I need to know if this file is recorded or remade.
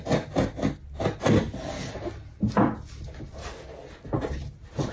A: recorded